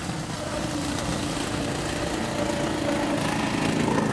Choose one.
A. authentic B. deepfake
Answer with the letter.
A